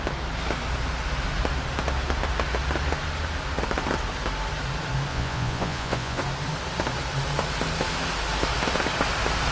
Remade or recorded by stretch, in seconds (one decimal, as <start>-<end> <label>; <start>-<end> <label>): 0.0-5.1 recorded; 5.1-6.2 remade; 6.2-9.5 recorded